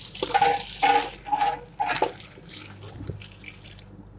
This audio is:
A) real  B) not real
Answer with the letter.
A